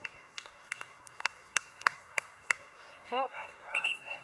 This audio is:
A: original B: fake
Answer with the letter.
B